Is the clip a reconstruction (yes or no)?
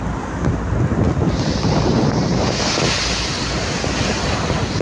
no